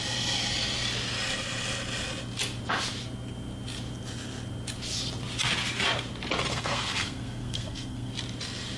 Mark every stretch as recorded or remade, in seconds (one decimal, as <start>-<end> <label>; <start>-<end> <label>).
0.0-6.5 recorded; 6.5-8.1 remade; 8.1-8.8 recorded

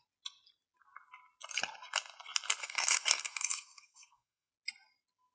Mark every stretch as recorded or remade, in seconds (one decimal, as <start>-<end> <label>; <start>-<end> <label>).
0.0-2.6 recorded; 2.6-4.5 remade; 4.5-5.3 recorded

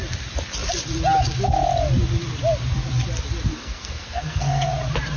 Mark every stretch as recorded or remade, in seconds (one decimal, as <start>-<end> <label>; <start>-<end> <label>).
0.0-3.5 recorded; 3.5-4.7 remade; 4.7-5.2 recorded

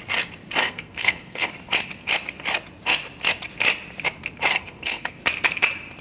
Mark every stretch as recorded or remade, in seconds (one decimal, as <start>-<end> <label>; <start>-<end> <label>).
0.0-0.6 recorded; 0.6-1.5 remade; 1.5-4.5 recorded; 4.5-5.2 remade; 5.2-6.0 recorded

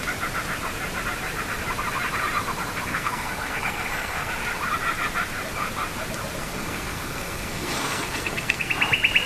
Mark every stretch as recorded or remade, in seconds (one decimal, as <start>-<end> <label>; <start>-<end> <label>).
0.0-2.9 recorded; 2.9-4.3 remade; 4.3-6.4 recorded; 6.4-8.7 remade; 8.7-9.3 recorded

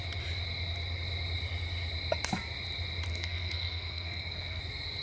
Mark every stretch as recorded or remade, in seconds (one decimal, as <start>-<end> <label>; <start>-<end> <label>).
0.0-3.1 recorded; 3.1-4.6 remade; 4.6-5.0 recorded

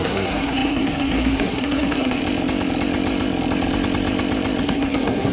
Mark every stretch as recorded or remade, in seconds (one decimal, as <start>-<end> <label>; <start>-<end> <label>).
0.0-2.2 remade; 2.2-4.6 recorded; 4.6-5.3 remade